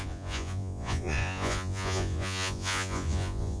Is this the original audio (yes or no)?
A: no